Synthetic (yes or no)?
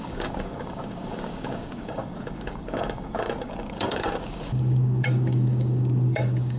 yes